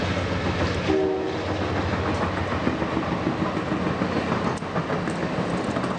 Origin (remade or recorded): recorded